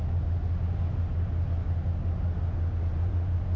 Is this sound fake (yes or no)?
no